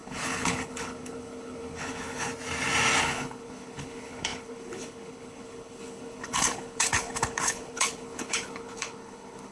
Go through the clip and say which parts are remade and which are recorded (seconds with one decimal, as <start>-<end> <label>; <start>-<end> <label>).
0.0-2.3 remade; 2.3-3.0 recorded; 3.0-9.5 remade